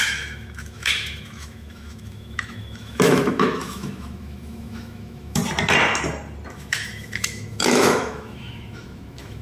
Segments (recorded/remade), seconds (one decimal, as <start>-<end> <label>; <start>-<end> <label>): 0.0-5.4 remade; 5.4-6.5 recorded; 6.5-9.4 remade